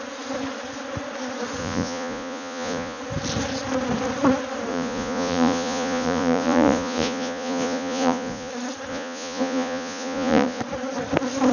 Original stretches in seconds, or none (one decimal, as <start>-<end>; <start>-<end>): 0.0-1.6; 3.0-4.7; 8.5-8.9; 10.6-11.5